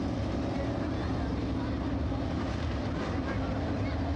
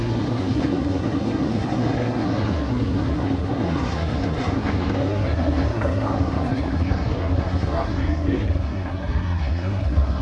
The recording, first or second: first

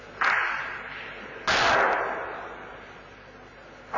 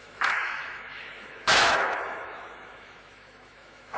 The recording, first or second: first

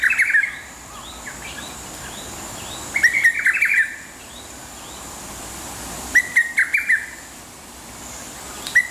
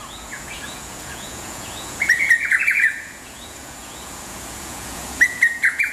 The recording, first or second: first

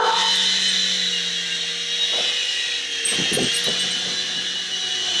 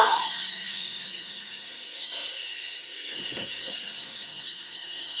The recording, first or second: first